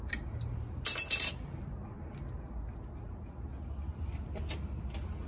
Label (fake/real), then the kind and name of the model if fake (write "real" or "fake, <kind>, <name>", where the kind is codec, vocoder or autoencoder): real